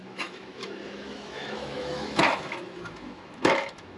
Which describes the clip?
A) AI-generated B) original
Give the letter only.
A